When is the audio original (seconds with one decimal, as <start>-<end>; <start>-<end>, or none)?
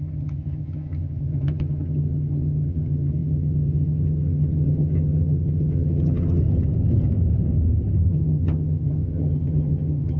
6.4-8.1